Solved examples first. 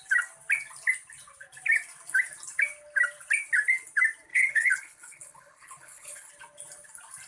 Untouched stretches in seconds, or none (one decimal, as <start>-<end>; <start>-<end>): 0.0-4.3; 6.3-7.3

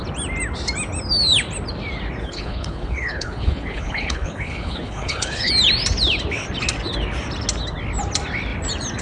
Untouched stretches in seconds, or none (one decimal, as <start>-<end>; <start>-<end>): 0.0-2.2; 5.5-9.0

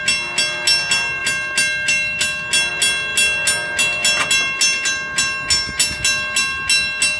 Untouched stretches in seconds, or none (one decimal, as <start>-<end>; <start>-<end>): 0.0-7.2

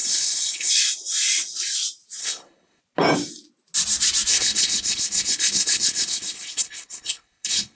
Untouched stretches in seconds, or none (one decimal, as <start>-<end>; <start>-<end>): 0.7-2.2; 2.8-4.3

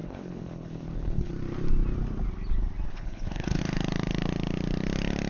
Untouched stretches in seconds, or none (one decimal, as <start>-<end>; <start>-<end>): 1.3-2.9; 3.6-5.3

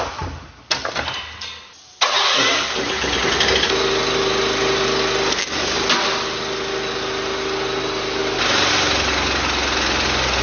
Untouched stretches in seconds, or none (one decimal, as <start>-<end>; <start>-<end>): 0.0-10.4